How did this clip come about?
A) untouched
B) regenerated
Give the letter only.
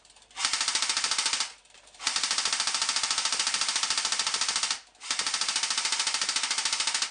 A